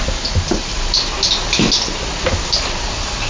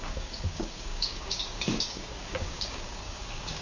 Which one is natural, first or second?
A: first